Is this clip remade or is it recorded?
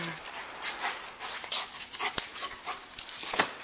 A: recorded